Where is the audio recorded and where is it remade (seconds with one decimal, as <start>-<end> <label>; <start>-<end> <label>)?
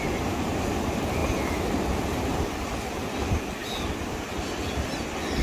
0.0-5.4 recorded